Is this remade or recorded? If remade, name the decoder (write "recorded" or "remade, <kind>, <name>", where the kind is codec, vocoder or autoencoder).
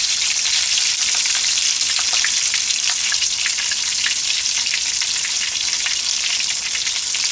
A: recorded